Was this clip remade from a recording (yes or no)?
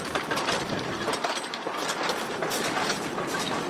yes